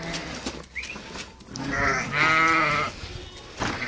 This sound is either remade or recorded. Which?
recorded